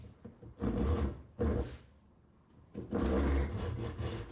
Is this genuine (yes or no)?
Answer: yes